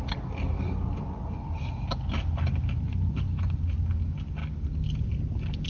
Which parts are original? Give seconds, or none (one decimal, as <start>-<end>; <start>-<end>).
0.0-5.7